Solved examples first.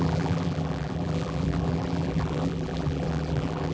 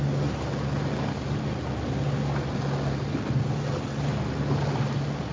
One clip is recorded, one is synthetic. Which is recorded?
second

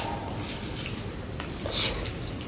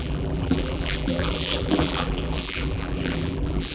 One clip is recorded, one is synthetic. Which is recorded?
first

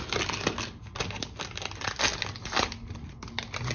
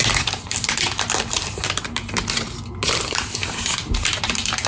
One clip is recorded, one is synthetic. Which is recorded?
first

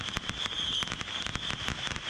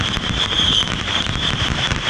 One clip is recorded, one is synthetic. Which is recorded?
first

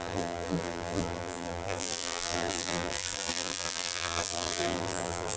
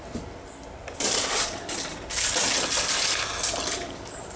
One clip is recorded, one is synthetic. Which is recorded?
second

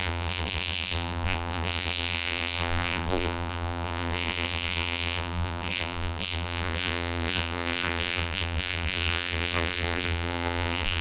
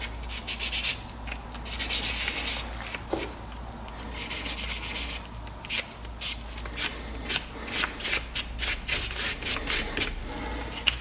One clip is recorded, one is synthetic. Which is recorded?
second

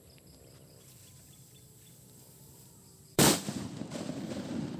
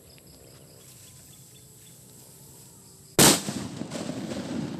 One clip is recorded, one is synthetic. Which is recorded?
second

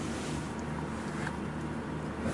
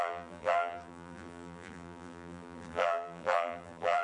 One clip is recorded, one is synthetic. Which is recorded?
first